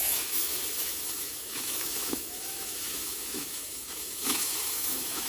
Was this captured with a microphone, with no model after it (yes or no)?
no